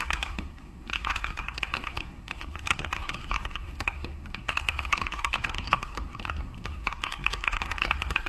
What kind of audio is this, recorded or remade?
remade